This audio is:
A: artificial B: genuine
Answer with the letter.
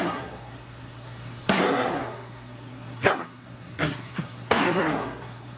A